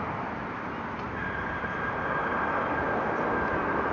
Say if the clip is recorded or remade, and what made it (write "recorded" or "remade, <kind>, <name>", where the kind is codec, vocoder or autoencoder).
recorded